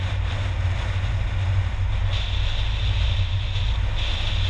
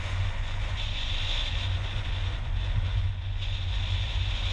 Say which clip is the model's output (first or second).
second